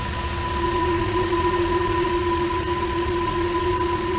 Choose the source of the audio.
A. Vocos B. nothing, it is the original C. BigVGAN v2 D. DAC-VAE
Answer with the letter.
A